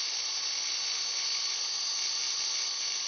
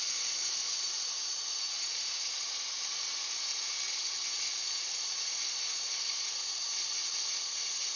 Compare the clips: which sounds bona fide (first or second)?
first